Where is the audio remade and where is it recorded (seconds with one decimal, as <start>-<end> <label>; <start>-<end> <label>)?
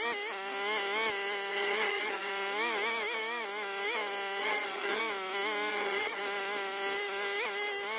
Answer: 0.0-1.5 recorded; 1.5-2.3 remade; 2.3-4.4 recorded; 4.4-5.0 remade; 5.0-5.7 recorded; 5.7-6.2 remade; 6.2-8.0 recorded